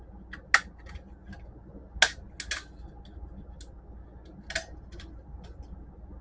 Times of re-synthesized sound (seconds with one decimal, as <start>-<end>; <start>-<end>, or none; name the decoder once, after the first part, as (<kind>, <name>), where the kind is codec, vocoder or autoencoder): none